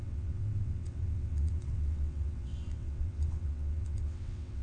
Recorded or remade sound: remade